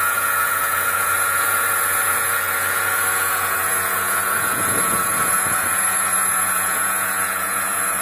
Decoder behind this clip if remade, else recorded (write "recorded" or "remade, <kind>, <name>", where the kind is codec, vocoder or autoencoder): remade, vocoder, Vocos